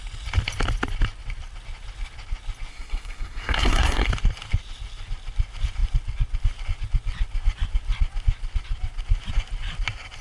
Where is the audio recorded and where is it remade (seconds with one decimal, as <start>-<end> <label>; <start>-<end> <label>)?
0.0-2.7 recorded; 2.7-4.1 remade; 4.1-10.2 recorded